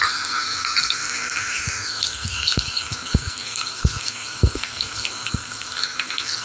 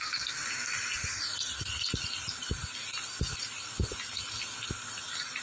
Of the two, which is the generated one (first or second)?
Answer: first